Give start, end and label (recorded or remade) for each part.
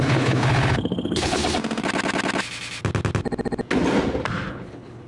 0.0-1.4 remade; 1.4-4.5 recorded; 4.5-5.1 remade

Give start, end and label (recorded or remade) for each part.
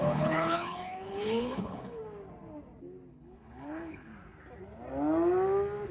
0.0-2.0 remade; 2.0-3.1 recorded; 3.1-4.1 remade; 4.1-5.9 recorded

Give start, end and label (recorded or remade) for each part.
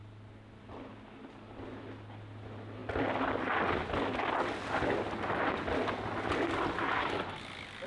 0.0-7.9 recorded